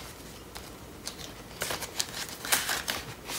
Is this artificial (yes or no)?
no